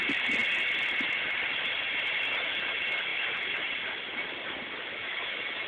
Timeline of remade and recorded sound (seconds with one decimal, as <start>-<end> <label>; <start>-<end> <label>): 0.0-5.0 recorded; 5.0-5.7 remade